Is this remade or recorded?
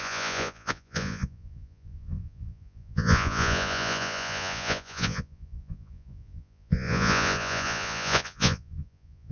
remade